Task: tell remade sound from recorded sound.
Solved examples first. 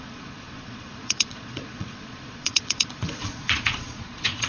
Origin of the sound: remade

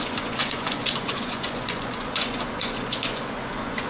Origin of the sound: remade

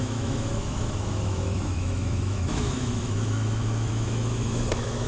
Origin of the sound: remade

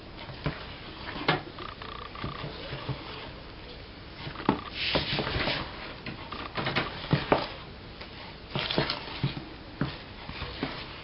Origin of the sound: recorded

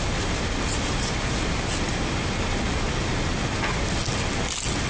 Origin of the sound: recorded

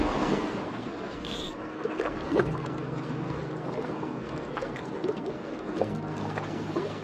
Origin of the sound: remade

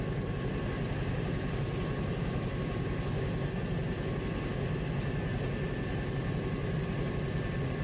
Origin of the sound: recorded